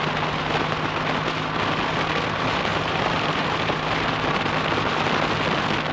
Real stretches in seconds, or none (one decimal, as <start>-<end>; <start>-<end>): 0.0-2.7; 4.5-5.9